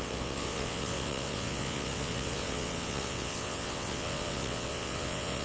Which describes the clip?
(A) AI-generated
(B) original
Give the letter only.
A